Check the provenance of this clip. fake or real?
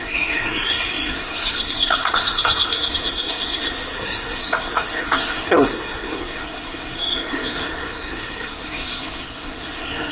fake